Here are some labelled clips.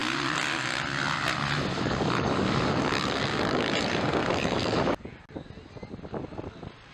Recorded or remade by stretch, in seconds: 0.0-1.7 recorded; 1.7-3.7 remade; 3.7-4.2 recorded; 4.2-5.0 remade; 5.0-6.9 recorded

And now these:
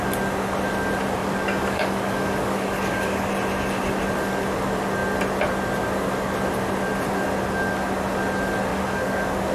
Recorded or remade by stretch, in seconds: 0.0-1.2 recorded; 1.2-3.3 remade; 3.3-8.7 recorded; 8.7-9.5 remade

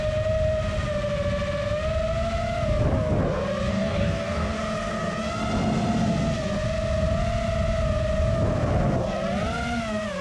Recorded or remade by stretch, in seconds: 0.0-3.7 recorded; 3.7-4.6 remade; 4.6-10.2 recorded